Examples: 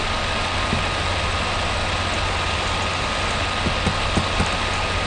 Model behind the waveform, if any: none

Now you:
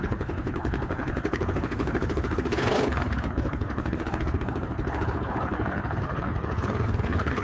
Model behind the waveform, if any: codec, HILCodec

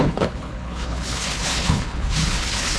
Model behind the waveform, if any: codec, HILCodec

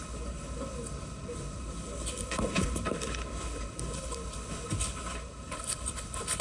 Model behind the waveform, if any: codec, HILCodec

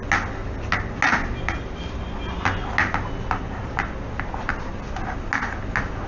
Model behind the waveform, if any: none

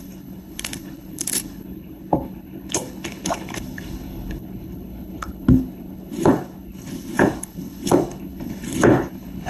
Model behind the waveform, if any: codec, HILCodec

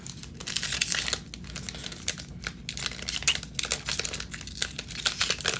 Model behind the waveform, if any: none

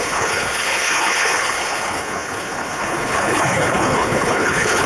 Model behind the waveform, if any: codec, HILCodec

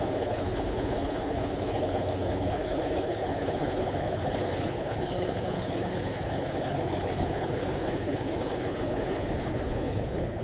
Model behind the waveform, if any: codec, HILCodec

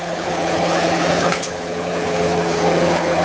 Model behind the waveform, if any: codec, HILCodec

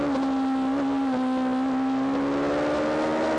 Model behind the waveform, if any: none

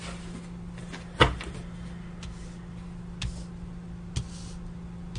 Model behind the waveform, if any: none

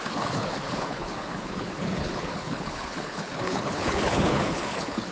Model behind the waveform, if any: codec, HILCodec